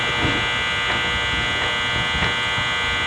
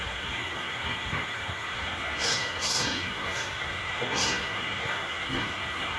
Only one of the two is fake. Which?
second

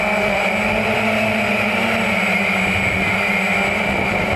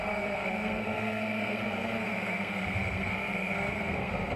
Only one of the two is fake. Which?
second